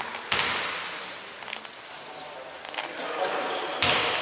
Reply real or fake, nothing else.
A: real